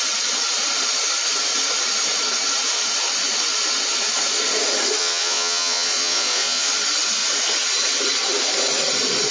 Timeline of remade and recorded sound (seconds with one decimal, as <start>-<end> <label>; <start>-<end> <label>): 0.0-5.0 recorded; 5.0-6.7 remade; 6.7-9.3 recorded